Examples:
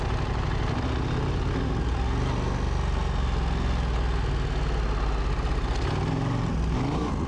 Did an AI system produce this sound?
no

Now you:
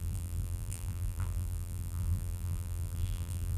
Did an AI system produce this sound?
yes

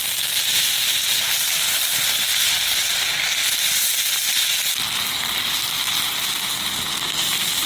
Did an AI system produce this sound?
no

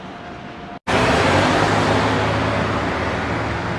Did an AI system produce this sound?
no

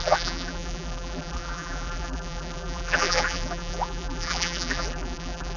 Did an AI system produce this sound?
yes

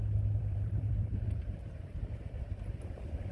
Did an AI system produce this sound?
yes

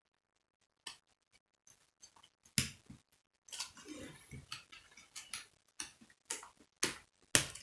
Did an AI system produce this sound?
no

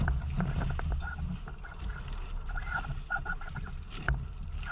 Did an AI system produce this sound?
no